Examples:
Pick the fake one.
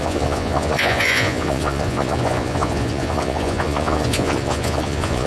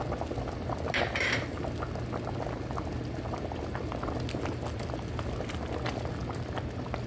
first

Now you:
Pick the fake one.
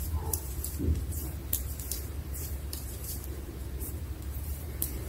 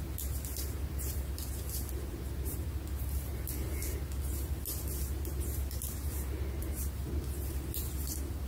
first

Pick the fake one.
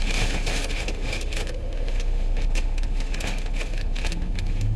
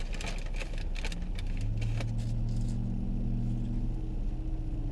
first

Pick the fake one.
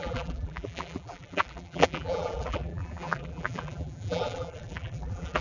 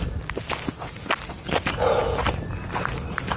first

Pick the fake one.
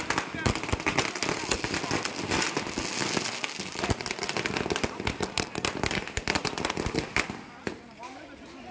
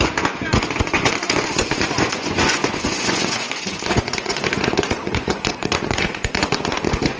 second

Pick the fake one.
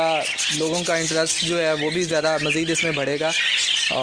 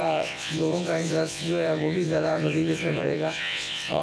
second